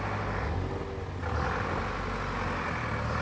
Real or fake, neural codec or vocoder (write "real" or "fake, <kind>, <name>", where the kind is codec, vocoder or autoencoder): real